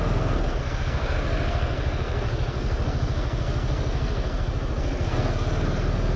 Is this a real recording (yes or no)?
no